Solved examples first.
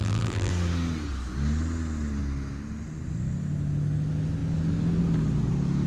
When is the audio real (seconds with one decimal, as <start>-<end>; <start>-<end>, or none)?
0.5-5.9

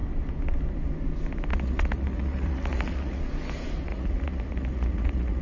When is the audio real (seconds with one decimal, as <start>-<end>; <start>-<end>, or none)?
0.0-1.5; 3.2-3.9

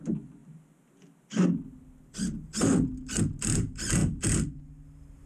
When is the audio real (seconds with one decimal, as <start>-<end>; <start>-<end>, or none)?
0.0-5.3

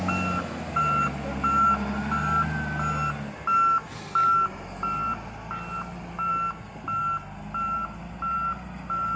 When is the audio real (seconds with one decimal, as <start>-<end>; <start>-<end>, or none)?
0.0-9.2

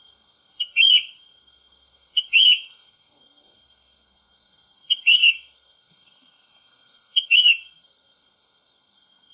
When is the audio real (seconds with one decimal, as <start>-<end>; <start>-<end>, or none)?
none

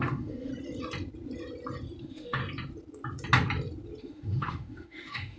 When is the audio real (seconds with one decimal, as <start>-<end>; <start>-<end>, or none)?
0.5-2.0; 2.4-4.0